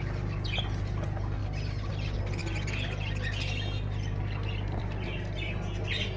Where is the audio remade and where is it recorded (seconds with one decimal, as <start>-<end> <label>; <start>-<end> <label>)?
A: 0.0-6.2 recorded